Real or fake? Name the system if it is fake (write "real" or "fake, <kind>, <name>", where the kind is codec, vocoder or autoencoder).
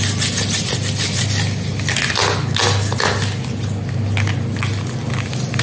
real